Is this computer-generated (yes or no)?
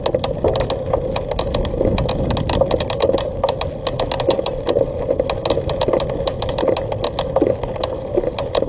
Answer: no